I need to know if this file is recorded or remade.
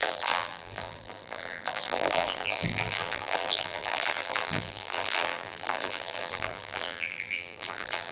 remade